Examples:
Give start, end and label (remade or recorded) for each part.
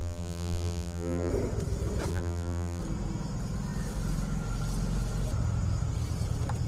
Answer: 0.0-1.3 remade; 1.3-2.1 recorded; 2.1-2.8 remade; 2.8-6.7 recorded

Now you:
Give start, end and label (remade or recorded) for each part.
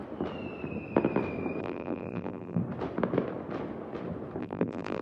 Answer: 0.0-1.6 recorded; 1.6-2.6 remade; 2.6-4.4 recorded; 4.4-5.0 remade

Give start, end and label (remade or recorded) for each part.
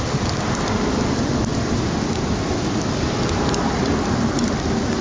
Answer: 0.0-1.5 recorded; 1.5-4.5 remade; 4.5-5.0 recorded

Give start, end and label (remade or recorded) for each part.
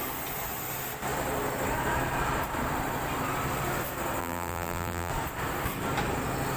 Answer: 0.0-4.2 recorded; 4.2-5.1 remade; 5.1-6.6 recorded